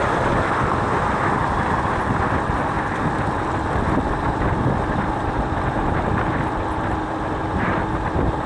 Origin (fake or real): real